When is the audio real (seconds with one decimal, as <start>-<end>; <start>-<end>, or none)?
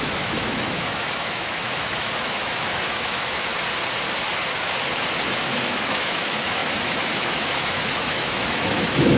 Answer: 3.5-5.5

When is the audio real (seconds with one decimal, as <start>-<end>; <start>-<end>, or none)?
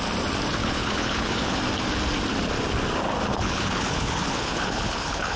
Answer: 0.0-0.6; 1.6-3.3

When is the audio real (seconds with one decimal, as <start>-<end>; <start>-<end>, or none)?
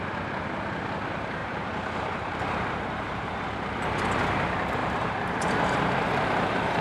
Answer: 0.0-1.4; 3.3-4.8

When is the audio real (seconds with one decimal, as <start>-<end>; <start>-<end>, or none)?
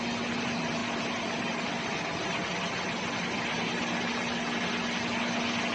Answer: 0.0-0.8; 2.6-5.7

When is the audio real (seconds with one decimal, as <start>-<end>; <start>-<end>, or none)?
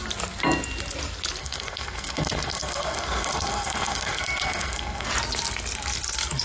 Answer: 0.0-1.4; 5.1-6.4